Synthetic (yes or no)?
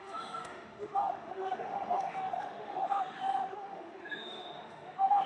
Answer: yes